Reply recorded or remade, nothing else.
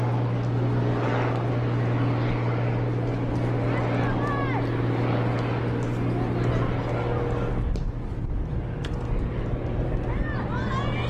recorded